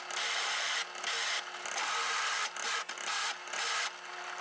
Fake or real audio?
real